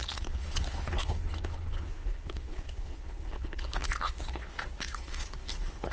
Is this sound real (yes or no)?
no